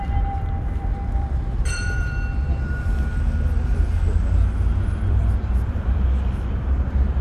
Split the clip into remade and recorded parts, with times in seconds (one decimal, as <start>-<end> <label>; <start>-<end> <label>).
0.0-3.1 remade; 3.1-4.9 recorded; 4.9-7.2 remade